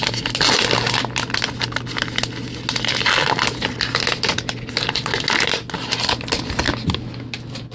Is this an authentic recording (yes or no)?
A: yes